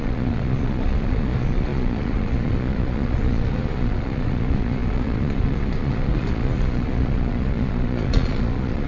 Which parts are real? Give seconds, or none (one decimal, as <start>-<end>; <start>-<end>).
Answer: none